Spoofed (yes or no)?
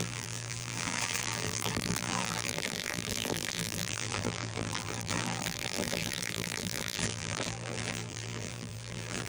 yes